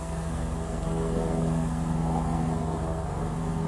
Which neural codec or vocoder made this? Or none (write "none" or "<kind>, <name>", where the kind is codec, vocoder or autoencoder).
codec, SNAC